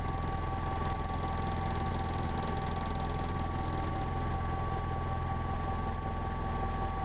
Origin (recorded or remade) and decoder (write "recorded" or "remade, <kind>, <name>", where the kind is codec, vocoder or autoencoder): recorded